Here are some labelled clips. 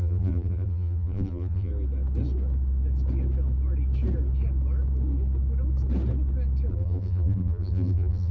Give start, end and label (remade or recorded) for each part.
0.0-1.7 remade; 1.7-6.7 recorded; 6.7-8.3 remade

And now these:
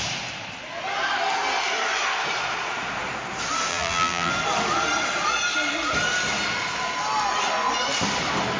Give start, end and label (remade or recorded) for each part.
0.0-3.7 recorded; 3.7-4.3 remade; 4.3-8.6 recorded

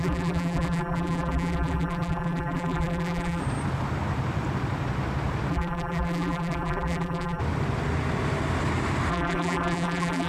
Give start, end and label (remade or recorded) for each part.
0.0-3.4 remade; 3.4-5.5 recorded; 5.5-7.4 remade; 7.4-9.1 recorded; 9.1-10.3 remade

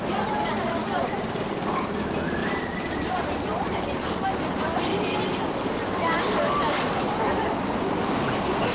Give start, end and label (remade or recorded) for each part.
0.0-2.4 recorded; 2.4-4.3 remade; 4.3-8.7 recorded

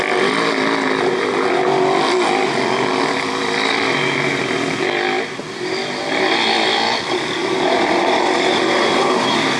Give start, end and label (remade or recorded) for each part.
0.0-7.4 recorded; 7.4-9.6 remade

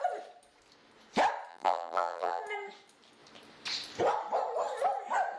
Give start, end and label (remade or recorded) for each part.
0.0-1.5 recorded; 1.5-2.4 remade; 2.4-5.4 recorded

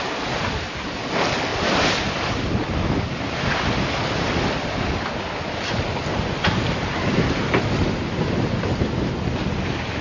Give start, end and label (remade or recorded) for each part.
0.0-1.5 recorded; 1.5-2.2 remade; 2.2-6.1 recorded; 6.1-9.1 remade; 9.1-10.0 recorded

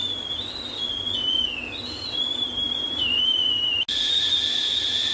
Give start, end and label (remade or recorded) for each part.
0.0-2.3 recorded; 2.3-3.2 remade; 3.2-5.1 recorded